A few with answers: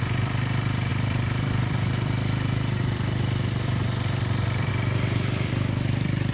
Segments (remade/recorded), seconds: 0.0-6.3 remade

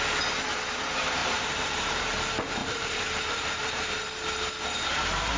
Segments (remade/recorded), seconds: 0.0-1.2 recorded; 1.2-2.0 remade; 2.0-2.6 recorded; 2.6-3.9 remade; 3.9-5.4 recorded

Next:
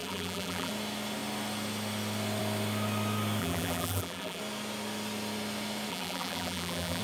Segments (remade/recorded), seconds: 0.0-0.7 remade; 0.7-3.4 recorded; 3.4-4.4 remade; 4.4-5.9 recorded; 5.9-7.0 remade

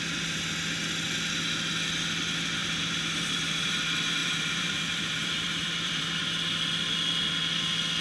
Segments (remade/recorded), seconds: 0.0-2.6 recorded; 2.6-3.7 remade; 3.7-4.2 recorded; 4.2-6.2 remade; 6.2-8.0 recorded

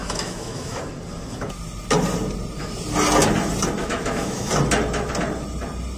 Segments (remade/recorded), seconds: 0.0-0.8 remade; 0.8-3.8 recorded; 3.8-4.5 remade; 4.5-6.0 recorded

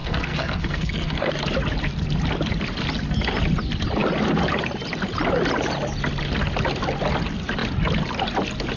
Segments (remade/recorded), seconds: 0.0-1.3 remade; 1.3-8.8 recorded

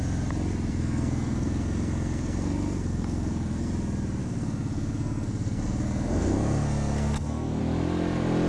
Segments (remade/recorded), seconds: 0.0-0.7 recorded; 0.7-3.7 remade; 3.7-4.2 recorded; 4.2-7.6 remade; 7.6-8.5 recorded

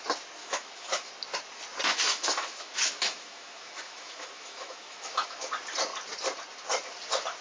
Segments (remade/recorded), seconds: 0.0-0.4 recorded; 0.4-1.1 remade; 1.1-1.9 recorded; 1.9-5.5 remade; 5.5-7.4 recorded